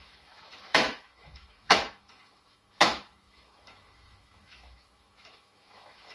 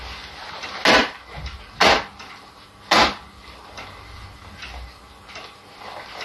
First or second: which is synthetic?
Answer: first